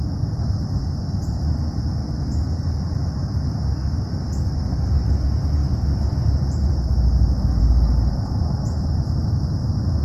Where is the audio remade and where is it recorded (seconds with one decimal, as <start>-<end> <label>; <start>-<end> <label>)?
0.0-10.0 recorded